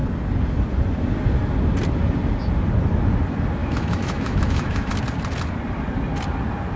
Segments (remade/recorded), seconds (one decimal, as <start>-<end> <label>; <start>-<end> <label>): 0.0-3.6 recorded; 3.6-4.9 remade; 4.9-6.8 recorded